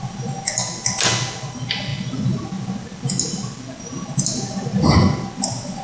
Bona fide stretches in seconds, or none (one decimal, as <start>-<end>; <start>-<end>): 0.0-5.8